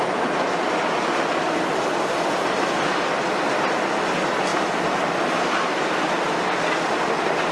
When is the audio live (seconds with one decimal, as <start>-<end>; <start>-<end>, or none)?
0.0-4.5; 5.1-7.5